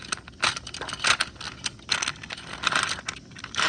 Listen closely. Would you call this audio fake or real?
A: real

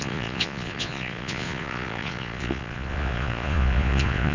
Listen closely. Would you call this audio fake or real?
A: fake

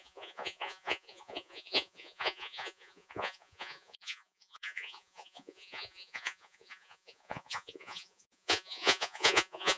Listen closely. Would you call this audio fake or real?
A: fake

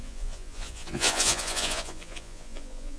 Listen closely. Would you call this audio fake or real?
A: fake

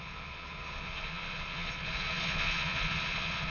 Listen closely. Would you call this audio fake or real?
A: fake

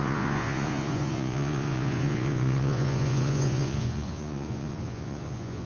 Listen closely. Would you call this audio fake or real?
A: fake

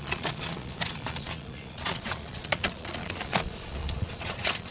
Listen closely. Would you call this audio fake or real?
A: fake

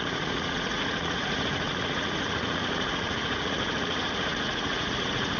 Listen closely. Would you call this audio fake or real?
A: fake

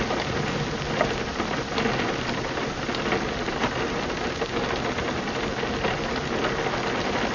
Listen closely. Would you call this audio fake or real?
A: real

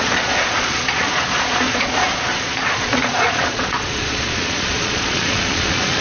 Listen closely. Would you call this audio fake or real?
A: fake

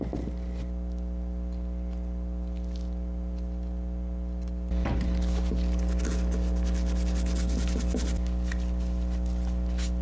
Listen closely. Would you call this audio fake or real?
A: real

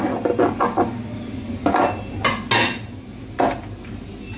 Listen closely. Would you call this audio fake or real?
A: real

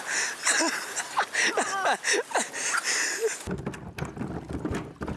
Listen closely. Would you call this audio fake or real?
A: real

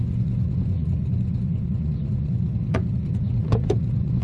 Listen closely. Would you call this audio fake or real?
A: fake